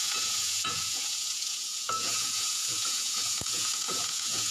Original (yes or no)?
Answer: no